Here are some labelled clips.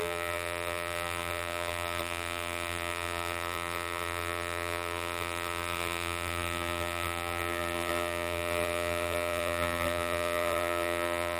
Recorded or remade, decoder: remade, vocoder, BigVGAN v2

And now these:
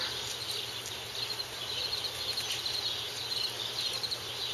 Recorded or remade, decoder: recorded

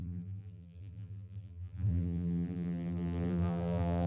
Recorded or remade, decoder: remade, vocoder, BigVGAN v2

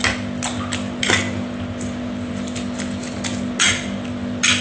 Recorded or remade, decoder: recorded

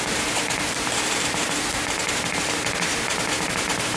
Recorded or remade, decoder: remade, vocoder, BigVGAN v2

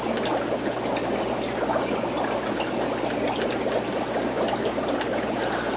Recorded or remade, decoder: recorded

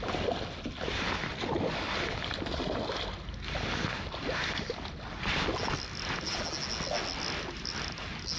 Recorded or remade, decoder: recorded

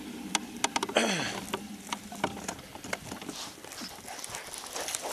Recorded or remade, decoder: recorded